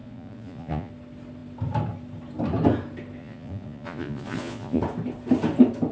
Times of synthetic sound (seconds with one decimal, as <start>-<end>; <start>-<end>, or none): 0.0-0.9; 3.2-4.8